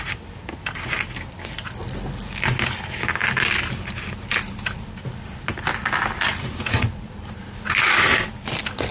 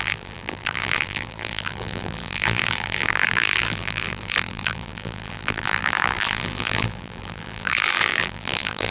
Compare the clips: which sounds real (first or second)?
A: first